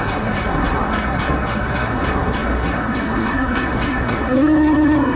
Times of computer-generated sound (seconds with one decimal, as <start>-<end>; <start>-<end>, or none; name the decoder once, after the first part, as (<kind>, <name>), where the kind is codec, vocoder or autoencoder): 0.0-5.2 (codec, SNAC)